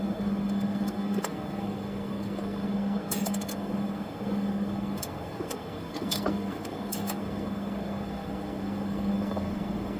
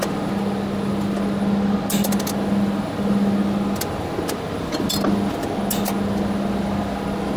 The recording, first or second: second